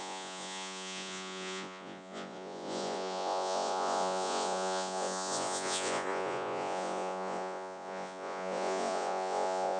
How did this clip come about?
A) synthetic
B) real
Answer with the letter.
A